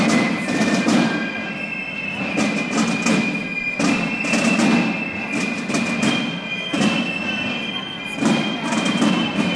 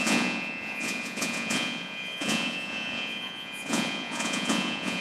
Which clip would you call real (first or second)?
first